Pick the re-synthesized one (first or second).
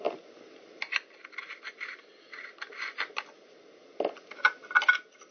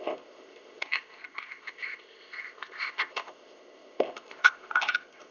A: second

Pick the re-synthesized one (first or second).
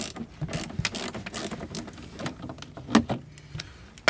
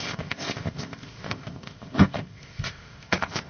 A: second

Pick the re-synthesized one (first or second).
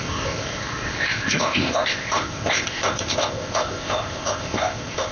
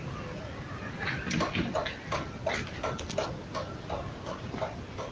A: first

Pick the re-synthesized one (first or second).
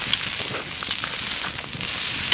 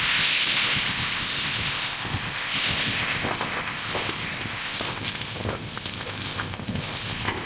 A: second